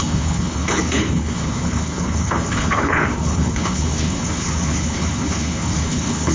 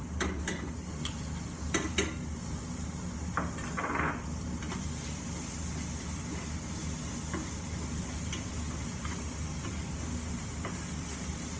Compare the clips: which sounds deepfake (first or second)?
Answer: first